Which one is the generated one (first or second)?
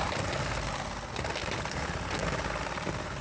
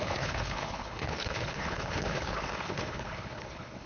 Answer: second